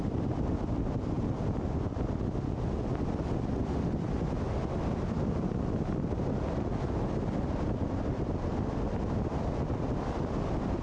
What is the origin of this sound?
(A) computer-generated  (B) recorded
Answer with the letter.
B